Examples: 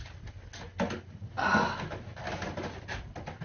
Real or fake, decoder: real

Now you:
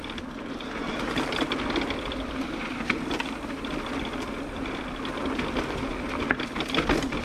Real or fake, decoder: real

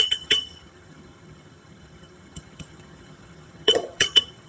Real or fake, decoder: fake, vocoder, HiFi-GAN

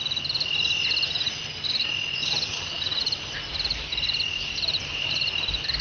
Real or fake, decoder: real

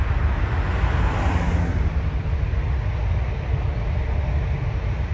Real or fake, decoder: real